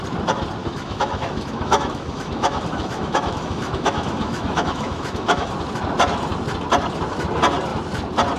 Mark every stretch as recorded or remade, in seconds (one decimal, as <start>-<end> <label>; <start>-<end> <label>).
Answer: 0.0-0.6 recorded; 0.6-5.5 remade; 5.5-8.4 recorded